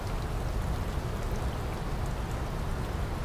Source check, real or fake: real